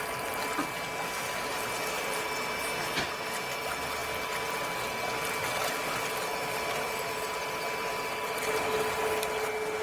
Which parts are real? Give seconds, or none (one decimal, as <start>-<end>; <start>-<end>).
0.0-9.8